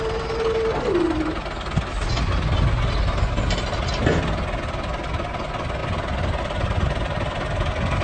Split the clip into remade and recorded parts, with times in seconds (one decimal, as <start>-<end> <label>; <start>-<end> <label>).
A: 0.0-8.0 recorded